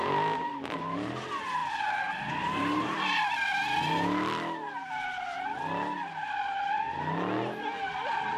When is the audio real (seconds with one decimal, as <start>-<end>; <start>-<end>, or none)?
0.0-8.4